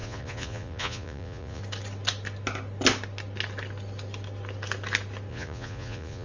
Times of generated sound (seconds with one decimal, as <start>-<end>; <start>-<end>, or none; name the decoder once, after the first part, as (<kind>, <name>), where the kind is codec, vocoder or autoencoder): 0.0-1.6 (vocoder, Vocos); 5.3-6.2